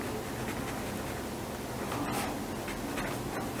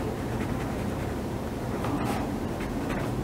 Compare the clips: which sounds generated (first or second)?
second